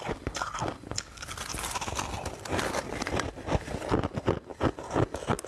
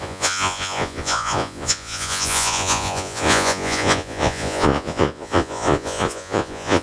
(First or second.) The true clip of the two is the first